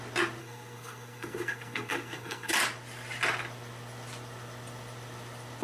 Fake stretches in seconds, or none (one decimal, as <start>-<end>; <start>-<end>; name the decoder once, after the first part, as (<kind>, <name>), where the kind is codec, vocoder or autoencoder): 0.4-2.5 (codec, SNAC)